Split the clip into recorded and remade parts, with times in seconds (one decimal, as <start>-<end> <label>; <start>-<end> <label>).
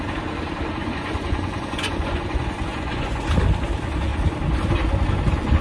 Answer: 0.0-0.8 recorded; 0.8-3.2 remade; 3.2-5.6 recorded